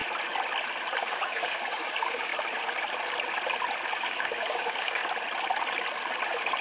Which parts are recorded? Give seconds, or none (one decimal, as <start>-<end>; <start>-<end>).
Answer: 0.0-1.0; 2.3-3.9; 5.0-6.6